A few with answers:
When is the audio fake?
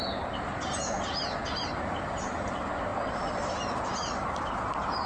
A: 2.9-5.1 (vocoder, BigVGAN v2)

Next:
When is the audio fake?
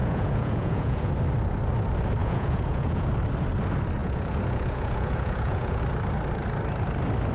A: 0.0-1.1 (vocoder, Vocos); 2.2-3.1; 4.0-5.8